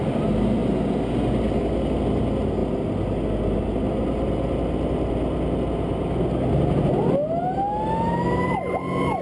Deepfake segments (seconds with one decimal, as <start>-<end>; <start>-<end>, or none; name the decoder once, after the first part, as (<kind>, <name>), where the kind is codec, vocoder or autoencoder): none